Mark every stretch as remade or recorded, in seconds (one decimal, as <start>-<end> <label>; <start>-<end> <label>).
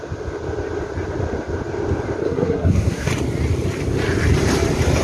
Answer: 0.0-2.2 recorded; 2.2-3.1 remade; 3.1-5.0 recorded